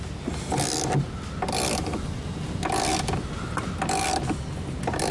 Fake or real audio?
real